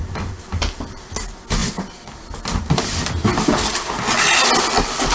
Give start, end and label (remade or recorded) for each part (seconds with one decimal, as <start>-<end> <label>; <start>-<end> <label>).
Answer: 0.0-1.1 remade; 1.1-5.1 recorded